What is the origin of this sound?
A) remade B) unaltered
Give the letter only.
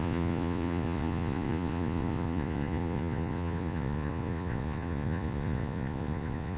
A